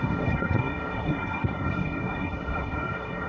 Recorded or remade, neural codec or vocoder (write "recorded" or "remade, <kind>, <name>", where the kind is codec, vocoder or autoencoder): remade, codec, SNAC